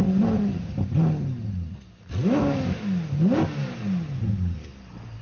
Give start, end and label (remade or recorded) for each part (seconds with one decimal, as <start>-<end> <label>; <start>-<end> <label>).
0.0-5.2 recorded